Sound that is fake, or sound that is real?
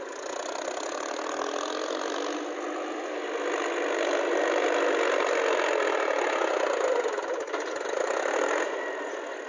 real